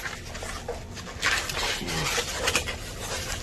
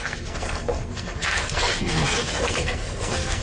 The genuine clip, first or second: first